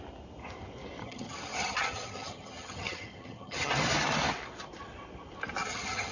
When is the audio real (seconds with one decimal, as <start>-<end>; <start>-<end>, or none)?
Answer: 0.0-1.0; 3.7-5.6